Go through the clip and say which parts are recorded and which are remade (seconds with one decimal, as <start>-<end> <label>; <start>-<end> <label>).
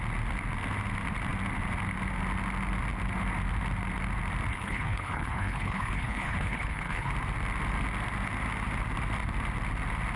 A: 0.0-4.5 recorded; 4.5-7.1 remade; 7.1-10.2 recorded